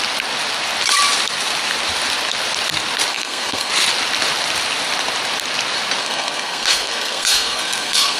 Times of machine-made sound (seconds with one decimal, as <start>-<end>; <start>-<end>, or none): 3.1-3.7; 6.0-8.2